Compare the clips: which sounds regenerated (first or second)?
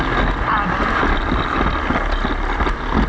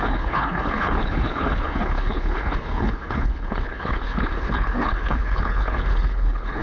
second